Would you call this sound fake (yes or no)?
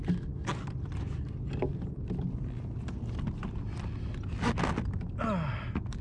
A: no